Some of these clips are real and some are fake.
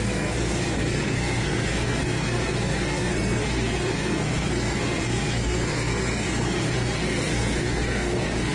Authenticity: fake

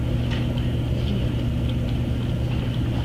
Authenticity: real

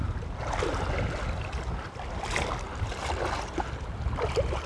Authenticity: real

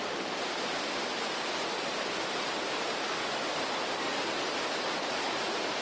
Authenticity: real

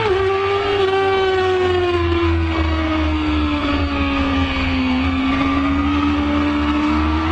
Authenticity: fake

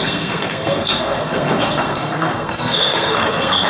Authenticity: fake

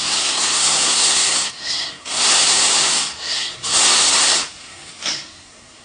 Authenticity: fake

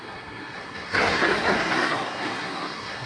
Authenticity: fake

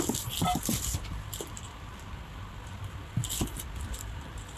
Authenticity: real